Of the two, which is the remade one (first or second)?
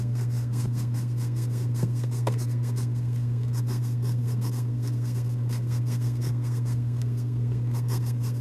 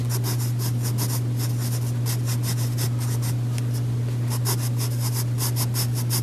first